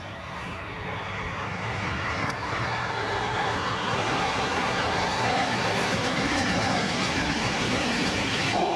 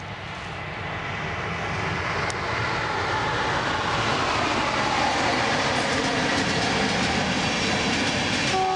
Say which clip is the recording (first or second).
second